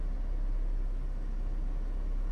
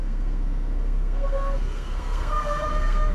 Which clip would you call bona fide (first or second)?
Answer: first